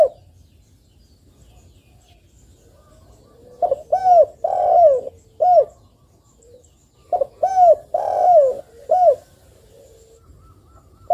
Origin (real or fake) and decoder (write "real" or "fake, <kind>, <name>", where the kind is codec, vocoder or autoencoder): real